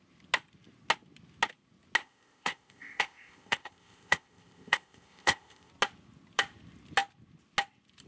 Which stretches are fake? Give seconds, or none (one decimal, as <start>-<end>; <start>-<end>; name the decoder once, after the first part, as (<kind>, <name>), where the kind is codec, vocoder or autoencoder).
2.0-5.7 (codec, ZipCodec)